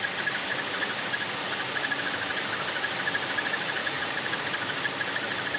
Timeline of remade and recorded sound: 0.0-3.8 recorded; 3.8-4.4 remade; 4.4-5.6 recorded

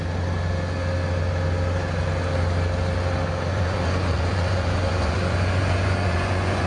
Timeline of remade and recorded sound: 0.0-3.5 recorded; 3.5-6.7 remade

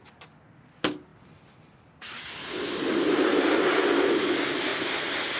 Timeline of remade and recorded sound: 0.0-5.4 recorded

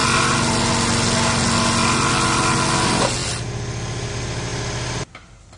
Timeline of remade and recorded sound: 0.0-5.6 recorded

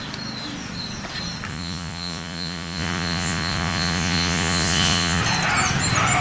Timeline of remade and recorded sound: 0.0-1.5 recorded; 1.5-5.2 remade; 5.2-6.2 recorded

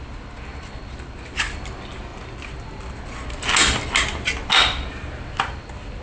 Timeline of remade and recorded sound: 0.0-6.0 recorded

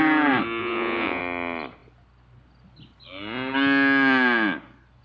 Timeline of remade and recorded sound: 0.0-0.6 recorded; 0.6-1.2 remade; 1.2-5.0 recorded